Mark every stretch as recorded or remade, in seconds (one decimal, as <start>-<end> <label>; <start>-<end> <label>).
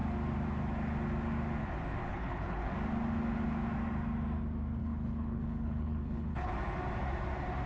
0.0-2.1 recorded; 2.1-2.7 remade; 2.7-4.8 recorded; 4.8-6.5 remade; 6.5-7.7 recorded